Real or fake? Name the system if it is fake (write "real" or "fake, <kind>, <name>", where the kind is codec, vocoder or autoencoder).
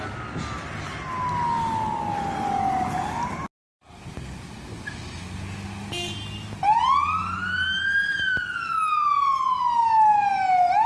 real